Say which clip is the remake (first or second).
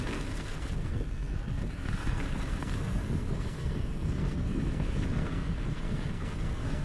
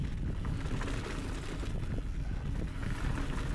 first